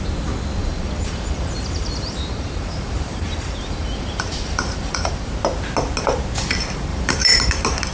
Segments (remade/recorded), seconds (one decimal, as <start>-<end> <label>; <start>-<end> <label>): 0.0-0.6 recorded; 0.6-5.3 remade; 5.3-6.9 recorded; 6.9-7.5 remade; 7.5-7.9 recorded